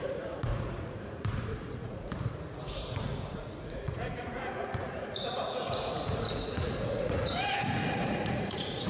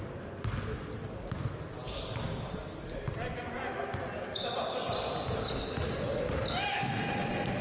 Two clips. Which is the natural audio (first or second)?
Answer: second